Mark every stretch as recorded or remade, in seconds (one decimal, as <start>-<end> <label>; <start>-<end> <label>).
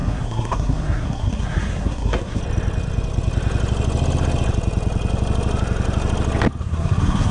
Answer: 0.0-2.4 remade; 2.4-6.6 recorded; 6.6-7.3 remade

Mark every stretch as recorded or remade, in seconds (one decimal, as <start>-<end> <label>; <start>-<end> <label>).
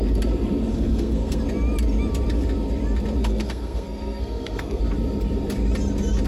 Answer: 0.0-0.7 recorded; 0.7-1.4 remade; 1.4-3.2 recorded; 3.2-4.8 remade; 4.8-6.3 recorded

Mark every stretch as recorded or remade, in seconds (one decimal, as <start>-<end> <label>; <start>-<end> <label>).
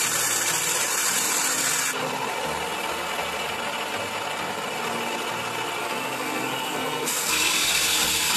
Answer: 0.0-5.8 recorded; 5.8-8.4 remade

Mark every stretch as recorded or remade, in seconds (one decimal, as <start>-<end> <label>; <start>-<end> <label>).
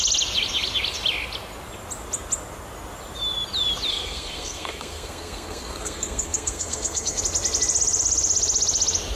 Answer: 0.0-3.9 recorded; 3.9-7.2 remade; 7.2-9.2 recorded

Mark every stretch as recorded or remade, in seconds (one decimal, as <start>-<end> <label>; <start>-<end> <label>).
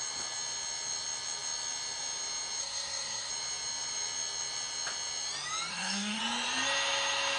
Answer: 0.0-2.6 recorded; 2.6-3.3 remade; 3.3-5.7 recorded; 5.7-6.2 remade; 6.2-7.4 recorded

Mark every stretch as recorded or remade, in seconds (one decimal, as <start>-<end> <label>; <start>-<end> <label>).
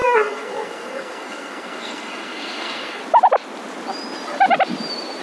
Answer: 0.0-3.0 remade; 3.0-5.2 recorded